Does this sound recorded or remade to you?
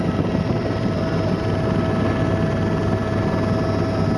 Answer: recorded